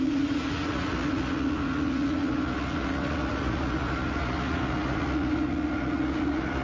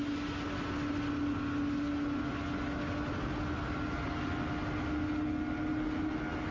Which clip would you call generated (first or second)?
first